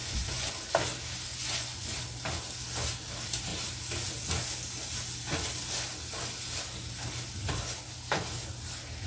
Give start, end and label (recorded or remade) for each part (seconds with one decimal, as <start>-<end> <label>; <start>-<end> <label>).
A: 0.0-0.5 remade; 0.5-1.3 recorded; 1.3-2.0 remade; 2.0-9.1 recorded